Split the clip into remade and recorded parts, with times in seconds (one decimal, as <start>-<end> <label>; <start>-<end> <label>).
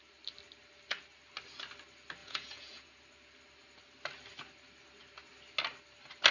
0.0-2.2 recorded; 2.2-3.0 remade; 3.0-6.3 recorded